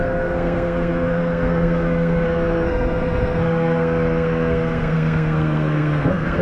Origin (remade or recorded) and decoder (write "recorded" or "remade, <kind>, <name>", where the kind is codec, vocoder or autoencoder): remade, codec, SNAC